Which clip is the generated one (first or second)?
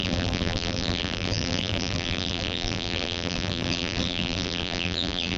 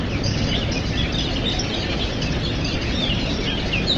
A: first